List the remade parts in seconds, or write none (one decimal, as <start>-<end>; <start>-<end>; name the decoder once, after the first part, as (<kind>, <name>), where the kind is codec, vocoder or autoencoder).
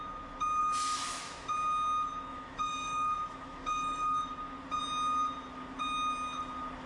0.6-1.3 (autoencoder, DAC-VAE); 2.3-4.3